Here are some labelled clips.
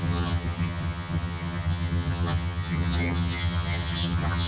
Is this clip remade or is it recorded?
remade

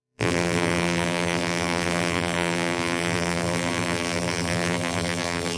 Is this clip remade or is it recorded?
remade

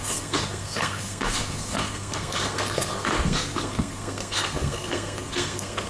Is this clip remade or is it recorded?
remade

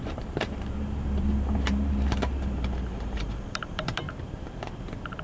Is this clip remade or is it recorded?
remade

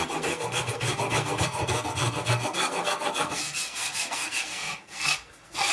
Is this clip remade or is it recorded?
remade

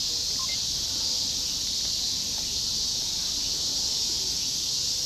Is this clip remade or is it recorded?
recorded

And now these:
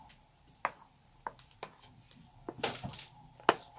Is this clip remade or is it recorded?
recorded